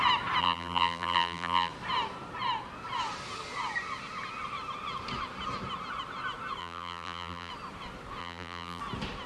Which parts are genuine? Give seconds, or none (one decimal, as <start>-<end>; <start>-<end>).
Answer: 0.0-0.4; 1.7-6.6; 7.5-8.2; 8.8-9.3